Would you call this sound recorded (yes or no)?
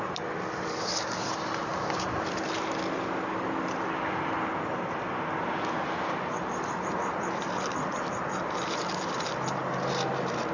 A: yes